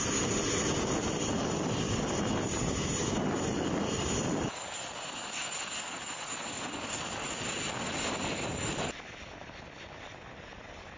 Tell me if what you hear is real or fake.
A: real